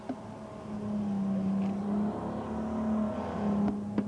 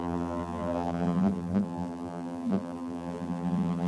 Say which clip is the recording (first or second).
first